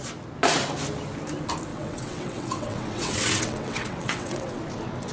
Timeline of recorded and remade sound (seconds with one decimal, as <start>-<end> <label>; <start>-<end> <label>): 0.0-1.7 recorded; 1.7-4.6 remade; 4.6-5.1 recorded

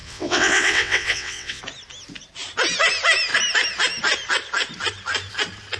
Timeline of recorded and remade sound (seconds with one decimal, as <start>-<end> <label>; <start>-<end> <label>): 0.0-1.6 remade; 1.6-5.8 recorded